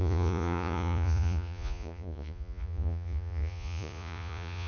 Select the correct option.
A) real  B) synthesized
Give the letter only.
B